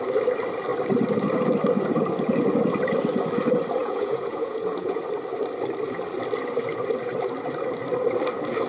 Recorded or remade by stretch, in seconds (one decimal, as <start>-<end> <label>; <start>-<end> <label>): 0.0-3.8 recorded; 3.8-5.0 remade; 5.0-8.7 recorded